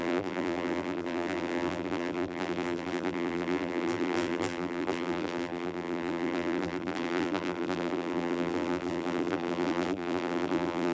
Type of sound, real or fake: fake